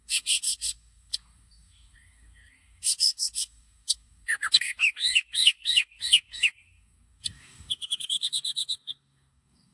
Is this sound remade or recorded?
remade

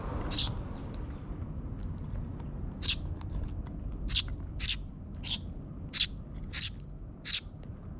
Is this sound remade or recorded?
recorded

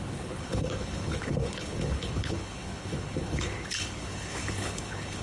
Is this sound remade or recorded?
remade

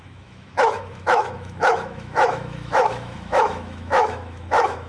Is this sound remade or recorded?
remade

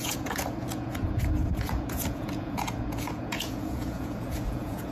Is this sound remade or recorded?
remade